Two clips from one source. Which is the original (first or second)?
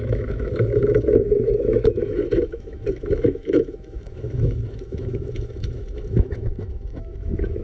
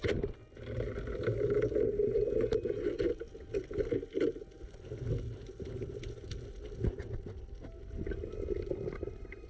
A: second